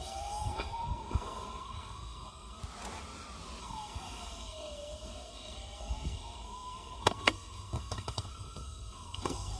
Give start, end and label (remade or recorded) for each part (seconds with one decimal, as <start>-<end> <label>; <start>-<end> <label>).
0.0-2.6 remade; 2.6-3.6 recorded; 3.6-9.6 remade